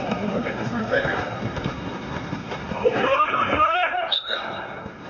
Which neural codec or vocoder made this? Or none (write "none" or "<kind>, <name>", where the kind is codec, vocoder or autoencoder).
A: codec, SNAC